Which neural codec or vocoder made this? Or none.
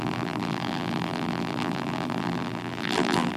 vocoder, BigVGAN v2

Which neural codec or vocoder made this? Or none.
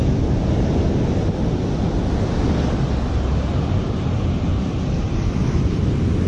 none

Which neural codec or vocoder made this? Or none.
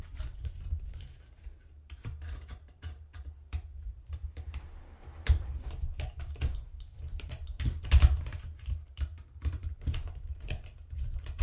vocoder, BigVGAN v2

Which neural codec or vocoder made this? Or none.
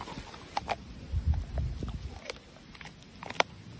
none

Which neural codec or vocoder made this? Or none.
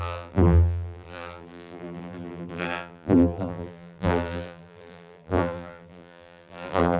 vocoder, BigVGAN v2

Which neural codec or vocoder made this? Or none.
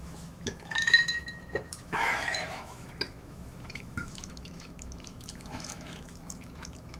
autoencoder, DAC-VAE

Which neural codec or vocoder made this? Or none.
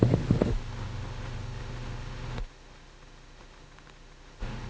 autoencoder, DAC-VAE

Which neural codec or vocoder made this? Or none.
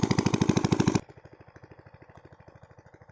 vocoder, BigVGAN v2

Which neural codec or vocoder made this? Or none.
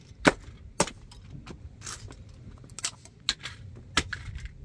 none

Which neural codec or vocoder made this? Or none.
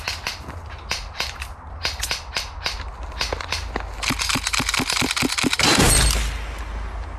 none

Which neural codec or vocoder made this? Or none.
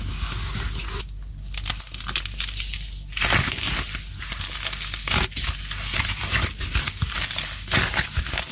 none